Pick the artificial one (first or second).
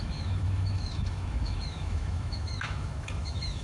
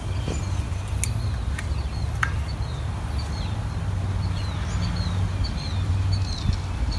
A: first